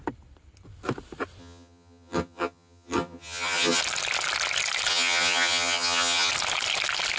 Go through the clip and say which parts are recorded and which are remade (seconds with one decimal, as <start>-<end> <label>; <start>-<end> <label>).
0.0-1.4 recorded; 1.4-3.8 remade; 3.8-4.9 recorded; 4.9-6.3 remade; 6.3-7.2 recorded

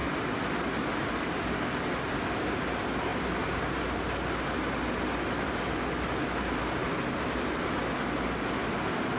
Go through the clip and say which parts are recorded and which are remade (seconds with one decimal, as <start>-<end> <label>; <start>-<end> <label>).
0.0-6.8 recorded; 6.8-7.7 remade; 7.7-9.2 recorded